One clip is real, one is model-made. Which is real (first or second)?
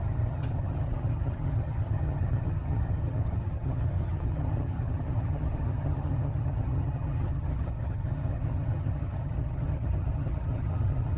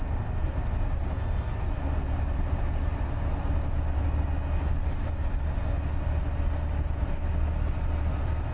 second